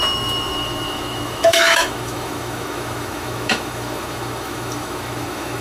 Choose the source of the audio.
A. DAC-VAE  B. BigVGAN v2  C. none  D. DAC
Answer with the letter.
A